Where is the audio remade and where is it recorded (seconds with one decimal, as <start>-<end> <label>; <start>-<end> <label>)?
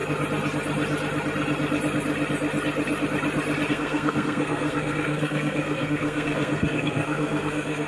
0.0-3.7 recorded; 3.7-7.9 remade